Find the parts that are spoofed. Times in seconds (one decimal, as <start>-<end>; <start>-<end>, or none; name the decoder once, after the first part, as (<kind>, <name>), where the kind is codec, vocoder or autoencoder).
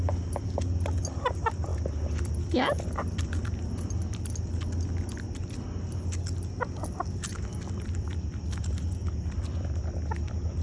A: none